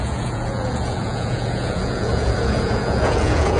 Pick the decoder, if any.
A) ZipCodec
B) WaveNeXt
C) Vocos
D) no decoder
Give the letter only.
C